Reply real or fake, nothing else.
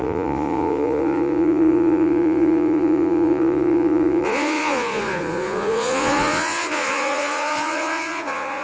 fake